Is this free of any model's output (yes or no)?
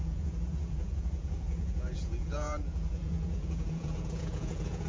no